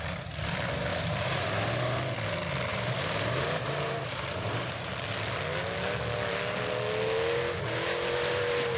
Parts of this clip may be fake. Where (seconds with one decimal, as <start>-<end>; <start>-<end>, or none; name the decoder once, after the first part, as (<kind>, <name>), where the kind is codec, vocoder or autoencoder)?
0.9-2.0 (vocoder, BigVGAN v2); 2.7-4.9